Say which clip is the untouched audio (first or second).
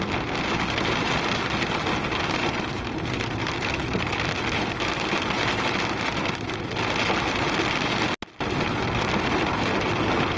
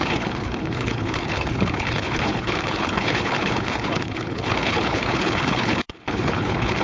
first